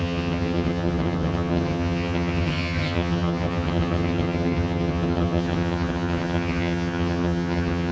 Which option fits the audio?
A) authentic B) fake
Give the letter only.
B